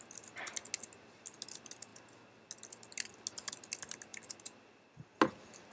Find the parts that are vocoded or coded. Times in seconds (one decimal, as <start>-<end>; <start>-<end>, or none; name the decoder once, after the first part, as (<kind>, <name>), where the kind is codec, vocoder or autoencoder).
none